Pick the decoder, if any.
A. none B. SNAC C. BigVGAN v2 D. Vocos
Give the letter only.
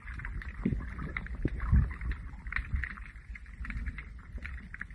C